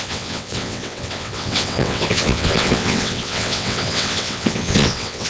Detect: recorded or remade remade